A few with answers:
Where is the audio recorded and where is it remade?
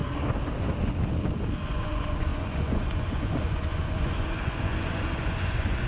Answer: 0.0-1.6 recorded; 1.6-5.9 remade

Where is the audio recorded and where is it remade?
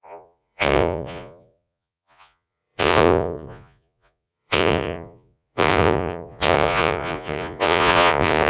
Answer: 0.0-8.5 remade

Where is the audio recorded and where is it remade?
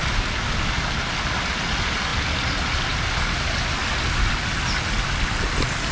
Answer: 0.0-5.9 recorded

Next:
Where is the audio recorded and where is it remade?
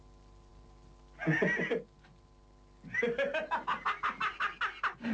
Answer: 0.0-5.1 recorded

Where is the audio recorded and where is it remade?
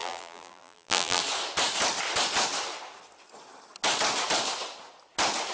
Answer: 0.0-1.2 remade; 1.2-5.5 recorded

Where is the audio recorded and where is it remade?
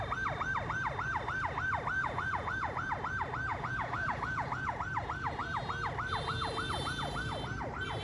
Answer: 0.0-2.0 recorded; 2.0-2.9 remade; 2.9-3.5 recorded; 3.5-4.8 remade; 4.8-8.0 recorded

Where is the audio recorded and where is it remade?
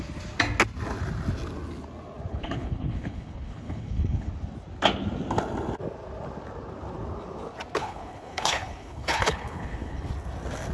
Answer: 0.0-2.3 recorded; 2.3-4.3 remade; 4.3-7.8 recorded; 7.8-10.1 remade; 10.1-10.7 recorded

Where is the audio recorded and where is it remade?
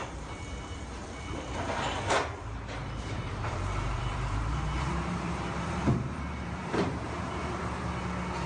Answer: 0.0-2.8 recorded; 2.8-7.9 remade; 7.9-8.5 recorded